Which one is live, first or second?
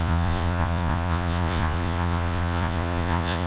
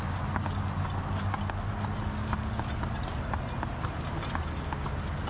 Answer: second